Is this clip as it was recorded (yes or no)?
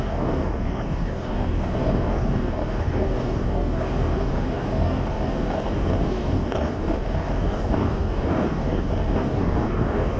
no